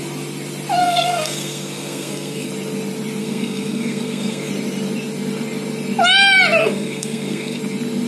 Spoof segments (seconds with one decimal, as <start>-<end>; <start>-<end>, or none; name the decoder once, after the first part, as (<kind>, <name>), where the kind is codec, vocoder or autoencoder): 0.8-2.5 (codec, SNAC); 3.2-4.5; 6.6-7.6